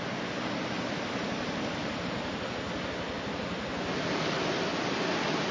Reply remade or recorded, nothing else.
recorded